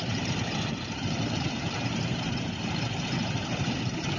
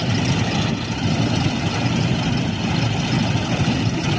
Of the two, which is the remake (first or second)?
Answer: first